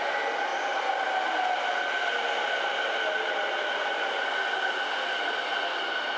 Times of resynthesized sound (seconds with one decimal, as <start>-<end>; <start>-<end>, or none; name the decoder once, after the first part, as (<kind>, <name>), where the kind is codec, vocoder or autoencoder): none